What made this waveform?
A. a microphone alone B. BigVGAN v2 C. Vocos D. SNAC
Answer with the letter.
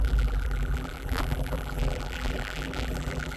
B